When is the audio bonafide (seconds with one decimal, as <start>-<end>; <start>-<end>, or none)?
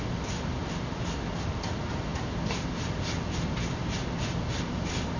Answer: 0.0-5.2